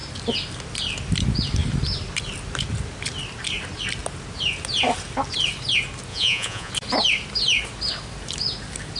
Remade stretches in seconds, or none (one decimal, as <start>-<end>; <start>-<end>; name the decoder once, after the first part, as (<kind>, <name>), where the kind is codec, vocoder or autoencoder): 6.1-6.7 (vocoder, Vocos)